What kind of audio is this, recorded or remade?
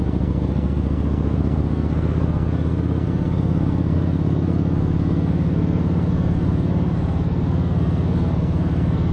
remade